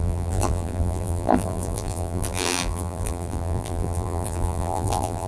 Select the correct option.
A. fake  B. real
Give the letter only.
A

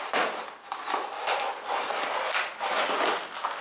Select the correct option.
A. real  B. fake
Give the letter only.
A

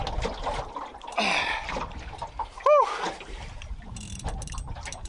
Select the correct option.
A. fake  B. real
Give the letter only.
B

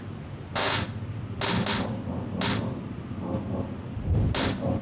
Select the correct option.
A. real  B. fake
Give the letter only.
A